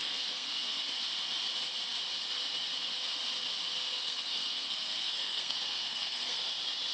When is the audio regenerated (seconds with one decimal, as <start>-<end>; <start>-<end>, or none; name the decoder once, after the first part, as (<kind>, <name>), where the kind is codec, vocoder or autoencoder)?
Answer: 0.0-0.8 (codec, SNAC); 3.9-6.4

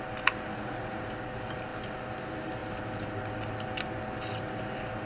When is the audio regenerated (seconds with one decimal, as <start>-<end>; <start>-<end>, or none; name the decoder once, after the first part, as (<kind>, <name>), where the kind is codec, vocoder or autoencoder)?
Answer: 0.5-1.0 (vocoder, Vocos)

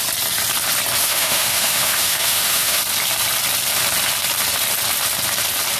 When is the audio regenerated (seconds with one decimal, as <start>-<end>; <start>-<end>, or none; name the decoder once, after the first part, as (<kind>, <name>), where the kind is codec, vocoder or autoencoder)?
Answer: 1.0-2.8 (autoencoder, DAC-VAE)

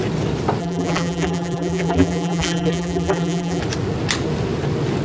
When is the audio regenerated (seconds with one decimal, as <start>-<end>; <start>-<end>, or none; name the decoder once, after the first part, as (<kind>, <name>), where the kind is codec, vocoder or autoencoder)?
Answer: 0.6-3.6 (vocoder, BigVGAN v2)